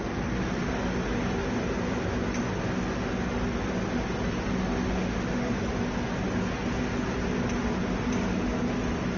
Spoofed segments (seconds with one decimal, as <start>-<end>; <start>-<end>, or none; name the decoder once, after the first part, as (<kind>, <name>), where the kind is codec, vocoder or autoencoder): 4.6-5.5 (autoencoder, DAC-VAE)